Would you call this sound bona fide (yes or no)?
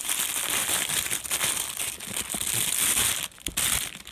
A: no